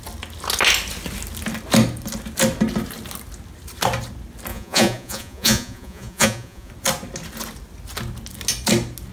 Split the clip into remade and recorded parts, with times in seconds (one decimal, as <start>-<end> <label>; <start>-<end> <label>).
0.0-4.5 recorded; 4.5-6.7 remade; 6.7-9.1 recorded